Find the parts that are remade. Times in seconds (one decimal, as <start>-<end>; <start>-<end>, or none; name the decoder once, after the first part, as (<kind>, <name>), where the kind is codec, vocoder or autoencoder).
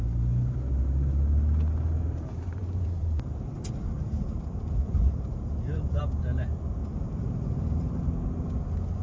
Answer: 2.6-6.0 (vocoder, BigVGAN v2); 6.8-8.0